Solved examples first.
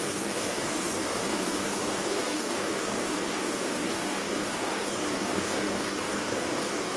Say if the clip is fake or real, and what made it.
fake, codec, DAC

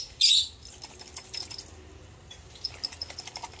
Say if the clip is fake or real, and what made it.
real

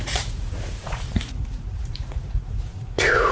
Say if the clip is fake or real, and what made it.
fake, vocoder, Vocos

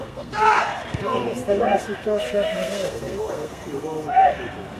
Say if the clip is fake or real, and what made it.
fake, codec, SNAC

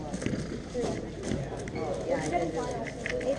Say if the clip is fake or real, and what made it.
real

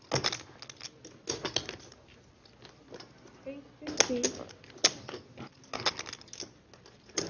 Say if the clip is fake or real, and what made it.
real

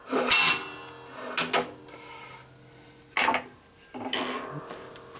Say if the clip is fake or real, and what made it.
real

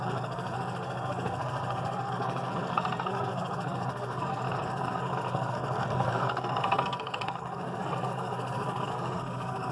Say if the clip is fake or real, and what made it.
fake, codec, SNAC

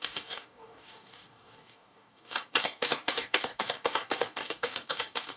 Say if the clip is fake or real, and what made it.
fake, codec, DAC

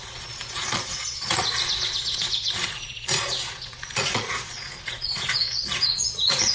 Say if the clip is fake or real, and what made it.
fake, vocoder, Vocos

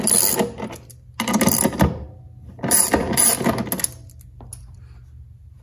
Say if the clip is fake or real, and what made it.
real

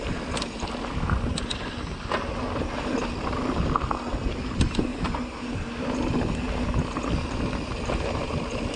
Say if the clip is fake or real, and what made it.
real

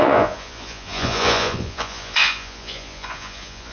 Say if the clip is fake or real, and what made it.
fake, vocoder, Vocos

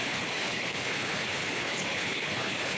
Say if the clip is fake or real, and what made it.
fake, codec, HILCodec